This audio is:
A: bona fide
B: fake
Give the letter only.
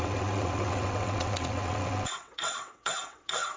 B